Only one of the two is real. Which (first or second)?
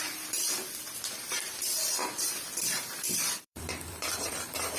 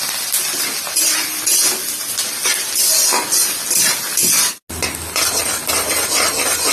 second